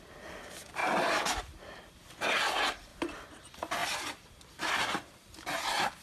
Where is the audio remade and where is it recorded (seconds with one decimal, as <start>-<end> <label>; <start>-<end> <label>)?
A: 0.0-0.8 recorded; 0.8-1.8 remade; 1.8-2.9 recorded; 2.9-3.4 remade; 3.4-6.0 recorded